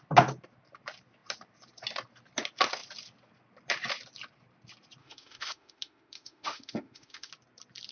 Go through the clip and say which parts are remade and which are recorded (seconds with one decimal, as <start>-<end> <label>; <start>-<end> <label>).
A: 0.0-5.0 recorded; 5.0-7.3 remade; 7.3-7.9 recorded